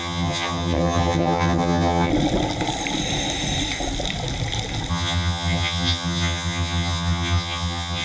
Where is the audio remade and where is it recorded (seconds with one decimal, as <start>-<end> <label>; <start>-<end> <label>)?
0.0-2.1 remade; 2.1-4.9 recorded; 4.9-8.0 remade